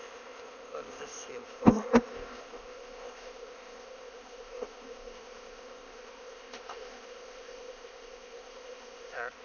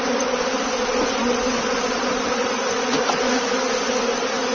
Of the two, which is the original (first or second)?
second